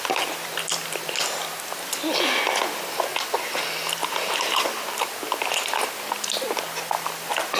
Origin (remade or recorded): recorded